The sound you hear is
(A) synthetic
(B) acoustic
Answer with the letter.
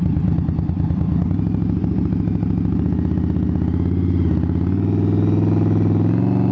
B